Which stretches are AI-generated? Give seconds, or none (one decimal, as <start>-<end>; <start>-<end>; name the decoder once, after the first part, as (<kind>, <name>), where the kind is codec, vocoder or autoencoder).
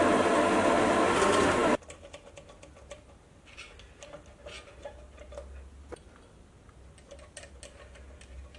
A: none